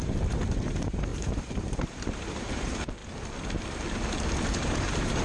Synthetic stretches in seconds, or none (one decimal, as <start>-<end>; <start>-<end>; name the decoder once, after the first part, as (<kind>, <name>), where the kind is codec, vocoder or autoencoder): 0.0-3.0 (vocoder, BigVGAN v2); 4.5-5.2